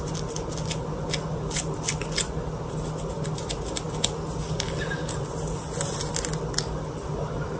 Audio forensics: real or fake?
real